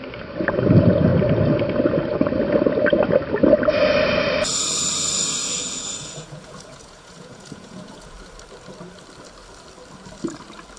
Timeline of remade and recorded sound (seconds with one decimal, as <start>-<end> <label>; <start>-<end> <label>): 0.0-5.4 recorded; 5.4-8.1 remade; 8.1-10.8 recorded